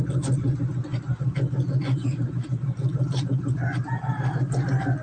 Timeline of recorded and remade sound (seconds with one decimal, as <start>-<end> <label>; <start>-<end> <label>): 0.0-5.0 recorded